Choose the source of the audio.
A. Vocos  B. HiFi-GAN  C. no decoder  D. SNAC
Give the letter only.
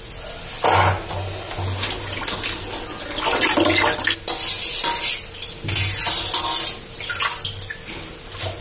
C